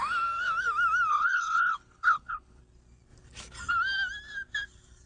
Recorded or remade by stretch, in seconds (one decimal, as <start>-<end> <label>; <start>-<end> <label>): 0.0-1.1 recorded; 1.1-2.6 remade; 2.6-5.1 recorded